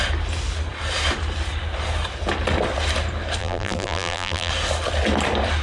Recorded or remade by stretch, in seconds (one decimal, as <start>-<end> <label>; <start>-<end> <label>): 0.0-3.4 recorded; 3.4-4.5 remade; 4.5-5.6 recorded